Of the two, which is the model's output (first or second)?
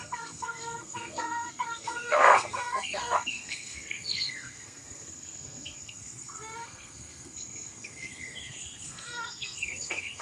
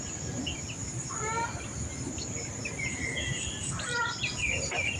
first